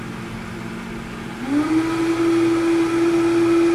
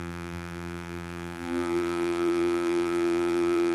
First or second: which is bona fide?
first